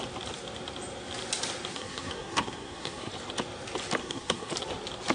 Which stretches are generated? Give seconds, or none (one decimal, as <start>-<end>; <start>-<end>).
1.7-3.1; 4.0-4.5